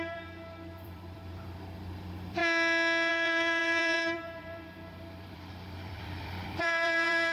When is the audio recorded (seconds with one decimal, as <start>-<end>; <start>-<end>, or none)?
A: 2.4-3.1